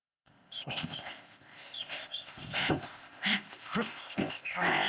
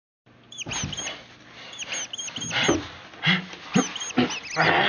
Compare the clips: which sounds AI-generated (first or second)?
first